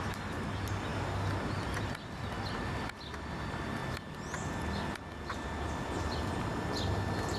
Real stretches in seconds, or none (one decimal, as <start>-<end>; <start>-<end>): 0.0-7.4